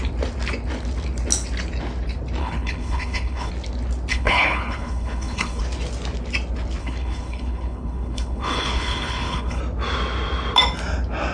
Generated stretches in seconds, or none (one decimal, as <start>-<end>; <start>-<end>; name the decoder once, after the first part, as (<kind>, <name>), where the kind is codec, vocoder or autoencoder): 2.4-3.5 (codec, HILCodec); 4.1-5.6; 6.8-9.6